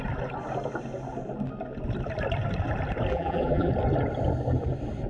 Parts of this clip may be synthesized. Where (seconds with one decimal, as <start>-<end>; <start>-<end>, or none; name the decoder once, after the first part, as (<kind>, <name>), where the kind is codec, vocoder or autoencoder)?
3.1-3.7 (vocoder, BigVGAN v2)